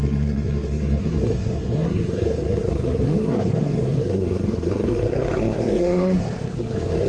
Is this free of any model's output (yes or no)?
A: no